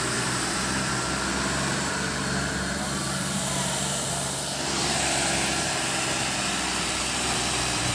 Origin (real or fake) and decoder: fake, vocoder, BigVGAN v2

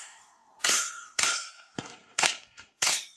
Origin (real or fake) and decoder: fake, codec, SNAC